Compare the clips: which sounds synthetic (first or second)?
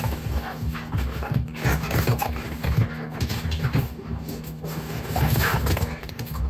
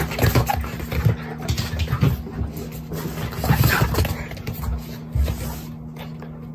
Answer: first